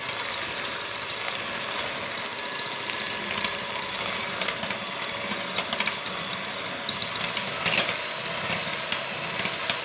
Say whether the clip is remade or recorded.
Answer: recorded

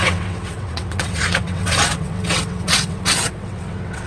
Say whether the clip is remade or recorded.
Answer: remade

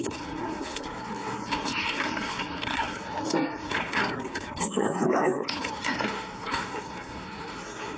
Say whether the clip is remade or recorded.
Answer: remade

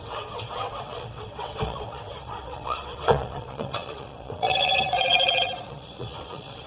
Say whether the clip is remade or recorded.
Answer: remade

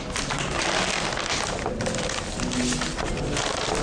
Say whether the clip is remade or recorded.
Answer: recorded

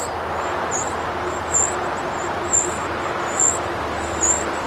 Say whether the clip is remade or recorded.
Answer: recorded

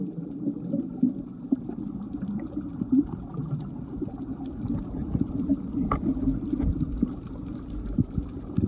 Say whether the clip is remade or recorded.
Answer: remade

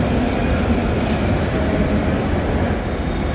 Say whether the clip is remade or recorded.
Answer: recorded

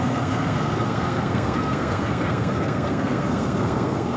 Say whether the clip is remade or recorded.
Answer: remade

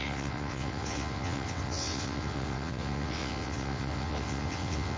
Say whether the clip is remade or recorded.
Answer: remade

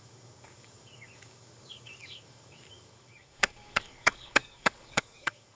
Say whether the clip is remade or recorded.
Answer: remade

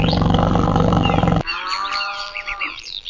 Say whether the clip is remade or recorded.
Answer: remade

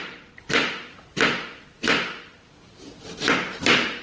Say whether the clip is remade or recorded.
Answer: remade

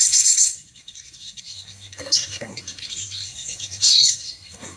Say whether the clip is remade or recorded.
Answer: remade